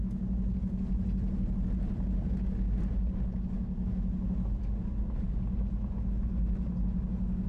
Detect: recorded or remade recorded